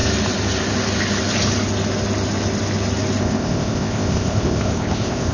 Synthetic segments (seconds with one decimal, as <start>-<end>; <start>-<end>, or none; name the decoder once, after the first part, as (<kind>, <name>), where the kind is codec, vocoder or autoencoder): 3.2-5.3 (codec, ZipCodec)